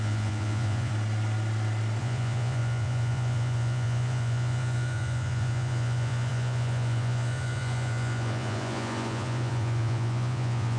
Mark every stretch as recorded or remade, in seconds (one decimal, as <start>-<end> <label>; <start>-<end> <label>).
0.0-0.9 remade; 0.9-2.0 recorded; 2.0-10.8 remade